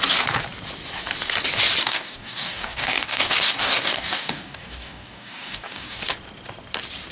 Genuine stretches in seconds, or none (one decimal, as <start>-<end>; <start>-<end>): 0.0-1.8; 6.0-7.1